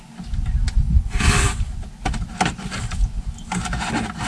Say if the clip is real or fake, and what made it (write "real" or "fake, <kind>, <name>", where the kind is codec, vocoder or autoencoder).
real